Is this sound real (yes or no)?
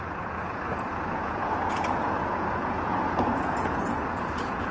no